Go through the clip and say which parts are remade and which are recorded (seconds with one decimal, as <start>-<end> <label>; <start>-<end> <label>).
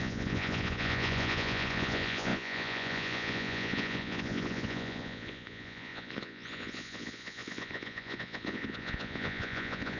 0.0-10.0 remade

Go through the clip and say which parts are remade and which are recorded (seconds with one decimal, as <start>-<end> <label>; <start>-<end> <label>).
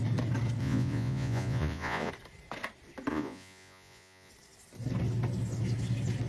0.0-0.6 recorded; 0.6-2.1 remade; 2.1-3.1 recorded; 3.1-4.3 remade; 4.3-6.3 recorded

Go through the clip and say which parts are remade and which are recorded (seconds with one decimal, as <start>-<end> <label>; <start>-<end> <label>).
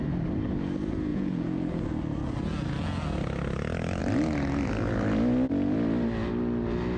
0.0-1.1 recorded; 1.1-1.8 remade; 1.8-7.0 recorded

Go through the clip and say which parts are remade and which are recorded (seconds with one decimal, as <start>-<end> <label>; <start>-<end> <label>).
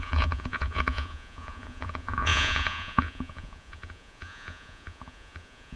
0.0-5.8 remade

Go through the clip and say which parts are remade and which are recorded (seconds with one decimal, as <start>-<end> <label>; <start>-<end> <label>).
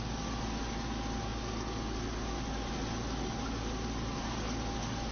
0.0-5.1 recorded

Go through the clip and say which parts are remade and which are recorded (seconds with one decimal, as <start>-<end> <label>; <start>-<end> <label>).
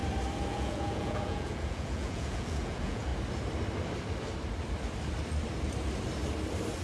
0.0-0.5 recorded; 0.5-3.1 remade; 3.1-6.8 recorded